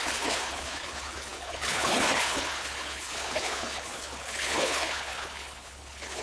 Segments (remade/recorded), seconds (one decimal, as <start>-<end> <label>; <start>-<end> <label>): 0.0-6.2 remade